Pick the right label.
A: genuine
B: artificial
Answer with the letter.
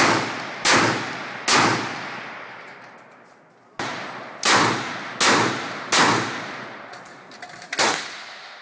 A